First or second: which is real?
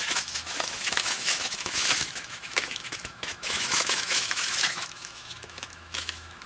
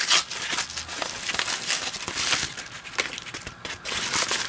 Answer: second